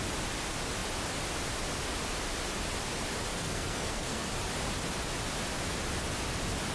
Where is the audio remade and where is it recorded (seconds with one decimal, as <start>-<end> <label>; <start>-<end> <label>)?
0.0-3.3 recorded; 3.3-4.3 remade; 4.3-6.7 recorded